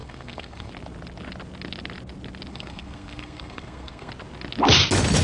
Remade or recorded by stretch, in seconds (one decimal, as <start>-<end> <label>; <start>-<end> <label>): 0.0-0.7 remade; 0.7-2.5 recorded; 2.5-4.1 remade; 4.1-5.2 recorded